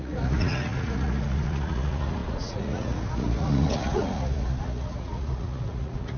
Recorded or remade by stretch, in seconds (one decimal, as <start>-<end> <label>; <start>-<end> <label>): 0.0-6.2 remade